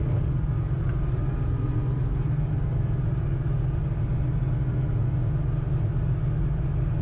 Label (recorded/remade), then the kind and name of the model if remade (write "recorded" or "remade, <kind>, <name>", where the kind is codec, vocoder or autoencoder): recorded